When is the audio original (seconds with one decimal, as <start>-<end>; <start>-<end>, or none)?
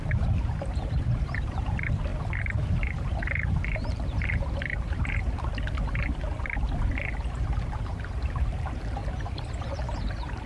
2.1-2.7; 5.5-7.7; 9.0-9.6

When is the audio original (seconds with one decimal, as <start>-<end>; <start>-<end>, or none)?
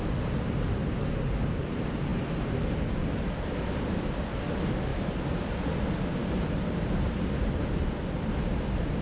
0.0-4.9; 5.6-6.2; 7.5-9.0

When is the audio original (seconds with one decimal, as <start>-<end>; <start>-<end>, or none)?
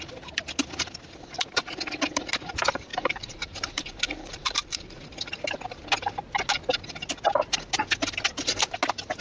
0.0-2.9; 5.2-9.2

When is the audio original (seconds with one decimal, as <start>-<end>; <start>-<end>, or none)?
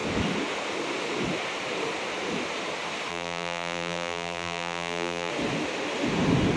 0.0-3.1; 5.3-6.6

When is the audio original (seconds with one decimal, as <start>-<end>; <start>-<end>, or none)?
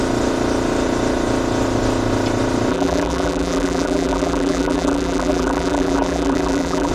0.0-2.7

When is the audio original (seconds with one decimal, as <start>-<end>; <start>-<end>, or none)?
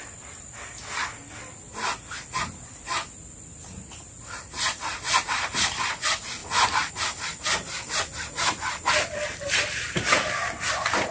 0.0-11.1